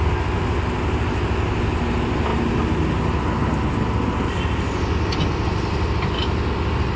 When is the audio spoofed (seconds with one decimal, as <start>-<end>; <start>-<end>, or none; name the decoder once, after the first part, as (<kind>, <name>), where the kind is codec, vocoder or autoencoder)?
none